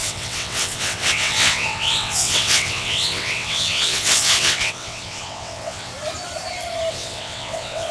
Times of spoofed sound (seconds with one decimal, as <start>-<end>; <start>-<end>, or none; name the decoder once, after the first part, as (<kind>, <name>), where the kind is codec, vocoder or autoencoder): 0.0-5.9 (vocoder, WaveNeXt); 6.9-7.9